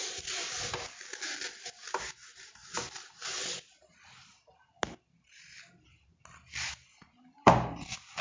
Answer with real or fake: real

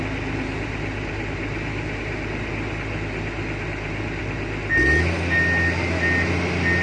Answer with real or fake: real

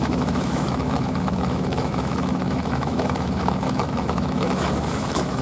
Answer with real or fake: fake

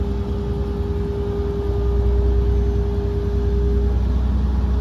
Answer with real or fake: real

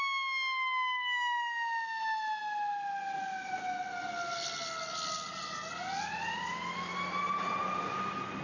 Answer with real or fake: real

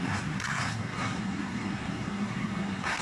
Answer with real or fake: fake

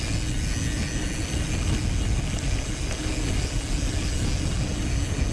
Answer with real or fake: real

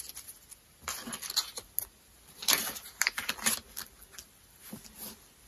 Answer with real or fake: real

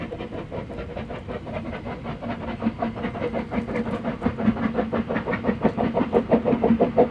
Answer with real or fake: real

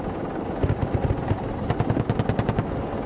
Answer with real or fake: real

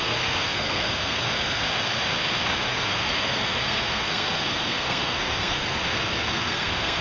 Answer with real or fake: fake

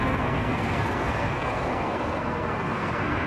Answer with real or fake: fake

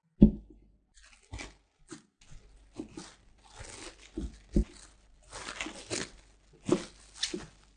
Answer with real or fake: real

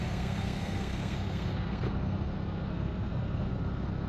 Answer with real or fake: fake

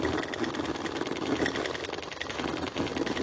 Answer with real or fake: real